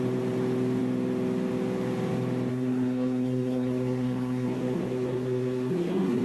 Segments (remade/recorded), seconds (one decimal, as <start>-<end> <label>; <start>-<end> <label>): 0.0-2.5 recorded; 2.5-6.2 remade